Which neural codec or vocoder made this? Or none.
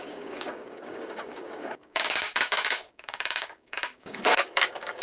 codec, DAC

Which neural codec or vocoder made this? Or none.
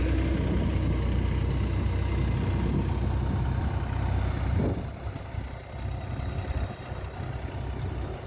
none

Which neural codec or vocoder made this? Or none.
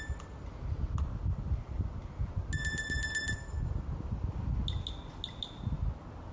none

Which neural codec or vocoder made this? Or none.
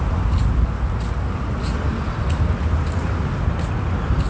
none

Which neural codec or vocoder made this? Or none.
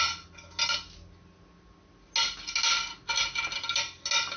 none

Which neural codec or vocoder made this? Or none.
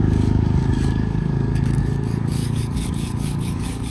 codec, DAC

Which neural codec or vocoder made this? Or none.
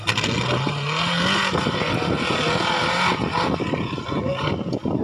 none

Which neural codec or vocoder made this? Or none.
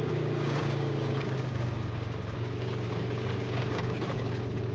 codec, DAC